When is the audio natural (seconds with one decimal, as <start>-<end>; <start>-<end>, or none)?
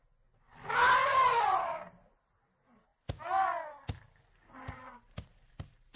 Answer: 0.0-6.0